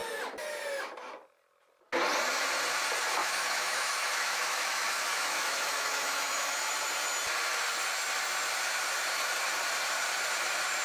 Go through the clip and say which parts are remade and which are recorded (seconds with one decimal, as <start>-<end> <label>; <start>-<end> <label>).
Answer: 0.0-3.2 recorded; 3.2-6.7 remade; 6.7-10.8 recorded